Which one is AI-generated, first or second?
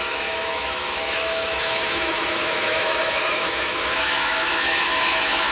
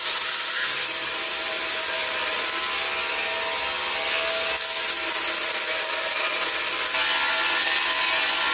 first